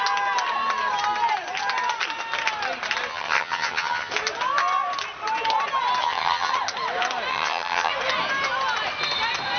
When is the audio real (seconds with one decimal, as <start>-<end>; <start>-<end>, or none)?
0.0-3.1; 4.1-6.0; 6.5-7.3; 7.9-9.6